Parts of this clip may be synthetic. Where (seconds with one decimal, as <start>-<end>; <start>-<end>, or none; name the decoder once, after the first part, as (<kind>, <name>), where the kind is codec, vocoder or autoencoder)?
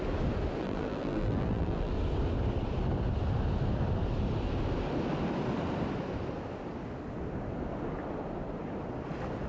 0.6-1.9 (vocoder, BigVGAN v2)